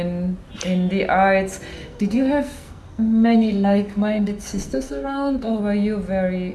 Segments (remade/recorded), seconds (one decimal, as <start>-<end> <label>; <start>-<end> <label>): 0.0-1.7 recorded; 1.7-5.6 remade; 5.6-6.5 recorded